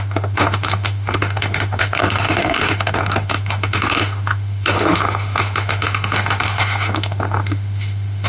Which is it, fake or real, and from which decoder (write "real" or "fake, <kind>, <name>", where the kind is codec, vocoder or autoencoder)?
fake, autoencoder, DAC-VAE